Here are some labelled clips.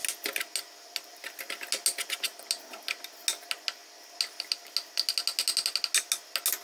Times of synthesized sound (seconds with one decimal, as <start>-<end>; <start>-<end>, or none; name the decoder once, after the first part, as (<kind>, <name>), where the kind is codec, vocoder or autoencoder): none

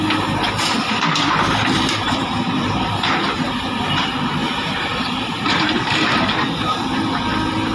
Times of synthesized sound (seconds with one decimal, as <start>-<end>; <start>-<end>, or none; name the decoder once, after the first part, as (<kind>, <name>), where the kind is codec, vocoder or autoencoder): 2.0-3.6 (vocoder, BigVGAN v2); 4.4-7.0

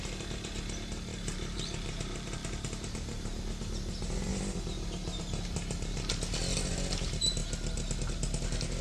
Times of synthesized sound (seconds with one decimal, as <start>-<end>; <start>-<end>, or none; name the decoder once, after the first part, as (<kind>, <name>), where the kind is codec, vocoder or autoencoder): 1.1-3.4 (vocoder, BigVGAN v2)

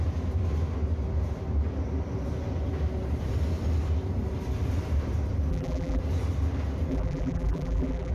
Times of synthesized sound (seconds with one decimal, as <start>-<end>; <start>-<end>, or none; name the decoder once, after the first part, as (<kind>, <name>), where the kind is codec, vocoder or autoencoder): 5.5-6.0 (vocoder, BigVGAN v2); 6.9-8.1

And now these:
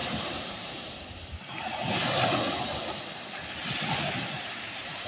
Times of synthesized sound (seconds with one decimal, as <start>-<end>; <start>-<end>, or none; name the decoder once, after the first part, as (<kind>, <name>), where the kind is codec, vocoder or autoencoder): 0.0-1.3 (vocoder, BigVGAN v2); 4.4-5.1

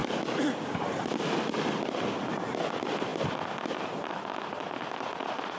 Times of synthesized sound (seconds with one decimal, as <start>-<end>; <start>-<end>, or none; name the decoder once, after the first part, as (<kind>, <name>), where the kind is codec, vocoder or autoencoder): 0.0-1.8 (vocoder, BigVGAN v2)